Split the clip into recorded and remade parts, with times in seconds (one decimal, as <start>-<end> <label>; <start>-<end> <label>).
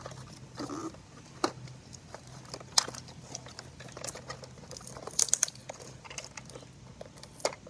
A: 0.0-7.7 recorded